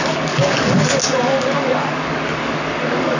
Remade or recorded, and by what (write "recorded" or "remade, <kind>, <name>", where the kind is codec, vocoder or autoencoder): remade, codec, DAC